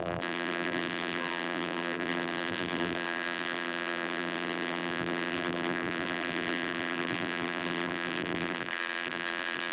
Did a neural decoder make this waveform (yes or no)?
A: yes